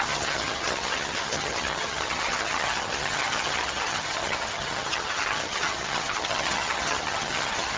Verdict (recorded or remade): remade